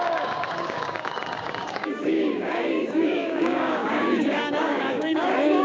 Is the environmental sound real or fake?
fake